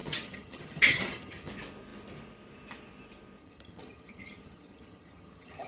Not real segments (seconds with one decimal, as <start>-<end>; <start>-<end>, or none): 0.0-1.5; 3.4-5.7